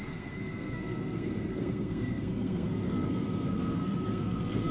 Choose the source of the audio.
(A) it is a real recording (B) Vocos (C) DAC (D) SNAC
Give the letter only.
D